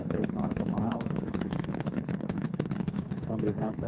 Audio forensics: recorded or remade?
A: remade